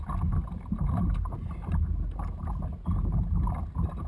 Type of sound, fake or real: real